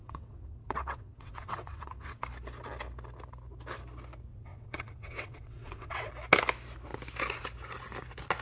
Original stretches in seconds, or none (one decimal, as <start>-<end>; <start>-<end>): 2.2-4.3; 6.1-8.4